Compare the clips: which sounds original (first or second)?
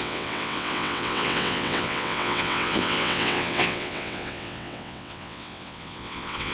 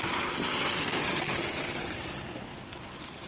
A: second